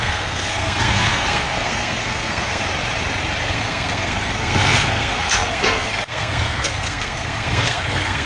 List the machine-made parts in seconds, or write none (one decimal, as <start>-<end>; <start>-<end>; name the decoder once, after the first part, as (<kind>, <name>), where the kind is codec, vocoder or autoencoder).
0.0-2.6 (codec, SNAC); 3.4-8.3